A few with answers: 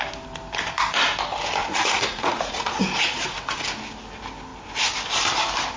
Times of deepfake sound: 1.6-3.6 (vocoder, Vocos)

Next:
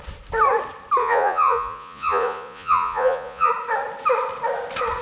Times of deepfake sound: 1.0-3.5 (vocoder, Vocos)

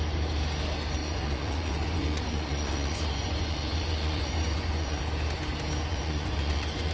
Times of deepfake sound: 1.0-5.0 (vocoder, Vocos); 5.9-6.9

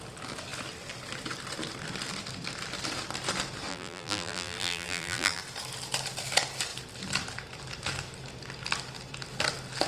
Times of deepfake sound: 3.7-5.4 (vocoder, BigVGAN v2)

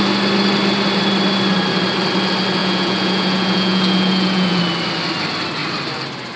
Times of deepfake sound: 2.6-4.6 (vocoder, Vocos)

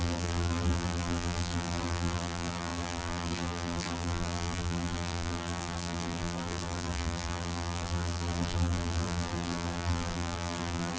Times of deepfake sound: 0.0-11.0 (vocoder, BigVGAN v2)

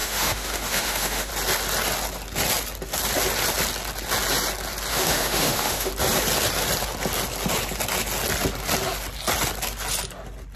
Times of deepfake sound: 0.0-1.3 (autoencoder, DAC-VAE); 4.9-5.9

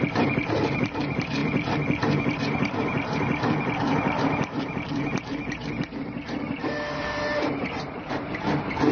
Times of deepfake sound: 0.0-8.9 (vocoder, BigVGAN v2)